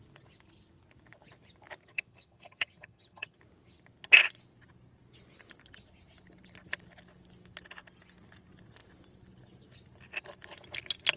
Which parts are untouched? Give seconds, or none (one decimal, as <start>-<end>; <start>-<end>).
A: 0.0-1.8; 3.4-11.2